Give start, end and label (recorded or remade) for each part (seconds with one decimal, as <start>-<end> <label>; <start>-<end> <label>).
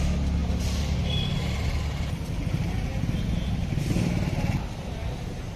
0.0-5.6 recorded